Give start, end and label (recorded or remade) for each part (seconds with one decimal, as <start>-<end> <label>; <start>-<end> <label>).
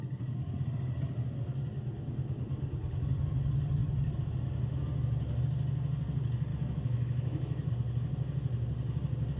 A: 0.0-6.5 recorded; 6.5-7.7 remade; 7.7-9.4 recorded